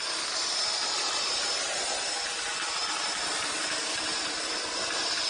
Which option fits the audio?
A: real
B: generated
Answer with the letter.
A